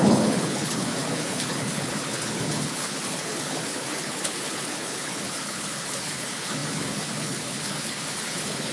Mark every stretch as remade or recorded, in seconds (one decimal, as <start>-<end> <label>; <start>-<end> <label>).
0.0-8.7 remade